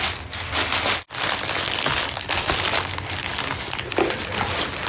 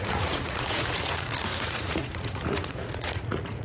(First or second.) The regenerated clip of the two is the second